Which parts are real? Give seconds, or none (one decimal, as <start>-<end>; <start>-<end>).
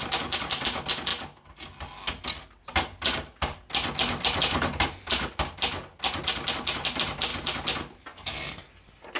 0.0-9.2